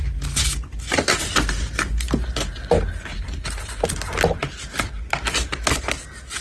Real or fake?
real